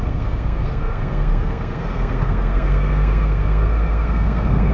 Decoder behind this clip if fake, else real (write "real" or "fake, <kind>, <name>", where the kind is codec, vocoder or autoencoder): fake, codec, SNAC